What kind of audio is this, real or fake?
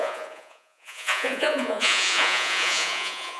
fake